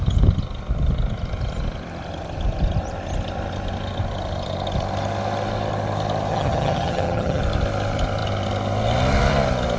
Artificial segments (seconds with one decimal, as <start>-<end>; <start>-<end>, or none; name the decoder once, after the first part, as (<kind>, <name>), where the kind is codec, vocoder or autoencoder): 6.3-7.4 (vocoder, HiFi-GAN)